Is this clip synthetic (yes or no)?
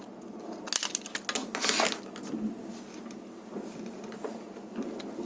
no